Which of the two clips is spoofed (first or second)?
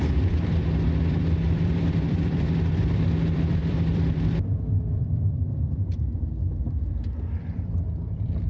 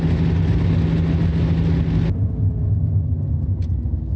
first